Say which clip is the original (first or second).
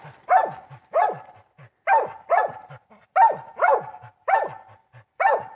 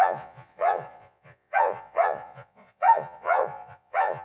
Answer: first